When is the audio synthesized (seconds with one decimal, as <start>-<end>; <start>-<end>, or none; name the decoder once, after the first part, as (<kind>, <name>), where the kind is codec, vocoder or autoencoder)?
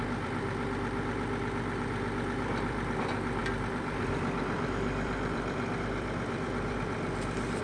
0.0-7.6 (vocoder, BigVGAN v2)